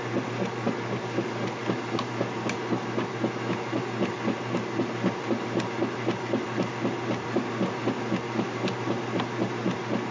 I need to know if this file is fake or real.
real